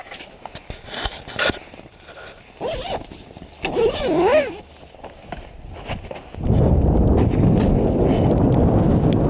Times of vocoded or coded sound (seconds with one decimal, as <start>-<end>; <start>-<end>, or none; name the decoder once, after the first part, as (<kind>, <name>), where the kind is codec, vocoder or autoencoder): none